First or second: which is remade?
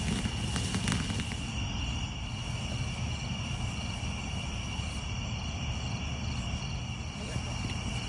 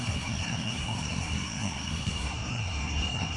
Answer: second